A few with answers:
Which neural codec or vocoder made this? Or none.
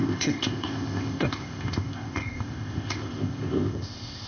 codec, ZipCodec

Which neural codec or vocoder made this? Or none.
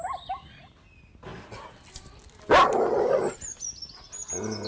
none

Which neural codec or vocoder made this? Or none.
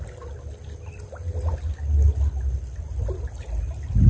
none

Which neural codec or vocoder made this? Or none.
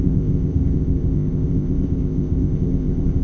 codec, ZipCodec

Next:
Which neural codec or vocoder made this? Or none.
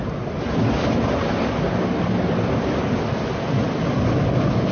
none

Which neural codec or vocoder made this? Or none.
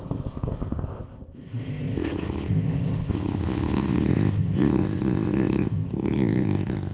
codec, ZipCodec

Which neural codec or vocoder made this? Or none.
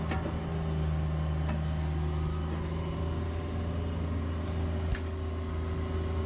none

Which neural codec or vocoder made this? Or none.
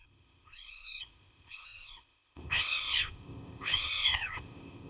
codec, ZipCodec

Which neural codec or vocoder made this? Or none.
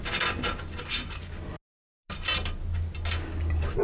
none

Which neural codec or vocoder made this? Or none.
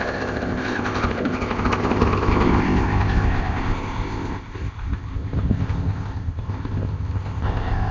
codec, ZipCodec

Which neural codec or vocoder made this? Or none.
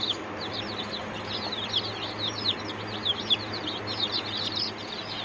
none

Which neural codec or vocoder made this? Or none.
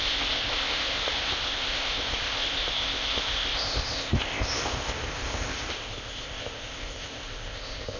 codec, ZipCodec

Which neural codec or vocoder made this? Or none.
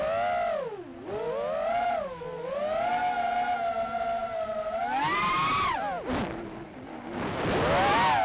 none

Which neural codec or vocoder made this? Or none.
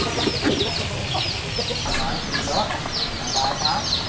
none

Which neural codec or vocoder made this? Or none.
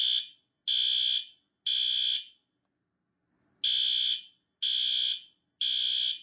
none